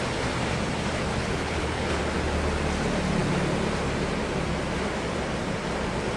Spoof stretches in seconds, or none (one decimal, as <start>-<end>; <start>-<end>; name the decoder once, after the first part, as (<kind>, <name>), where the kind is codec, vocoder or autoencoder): 1.1-2.0 (codec, HILCodec)